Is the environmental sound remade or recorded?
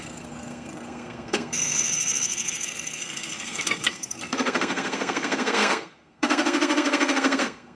remade